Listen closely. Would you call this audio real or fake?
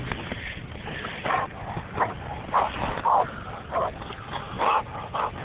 real